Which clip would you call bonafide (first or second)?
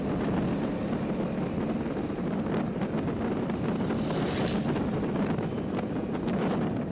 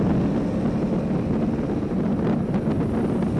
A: second